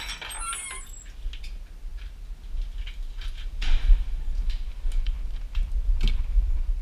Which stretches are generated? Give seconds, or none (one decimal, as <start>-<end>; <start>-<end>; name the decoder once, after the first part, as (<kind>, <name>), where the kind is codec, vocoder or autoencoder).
none